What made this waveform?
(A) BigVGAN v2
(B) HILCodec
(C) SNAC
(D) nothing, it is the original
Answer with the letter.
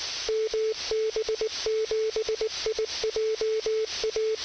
D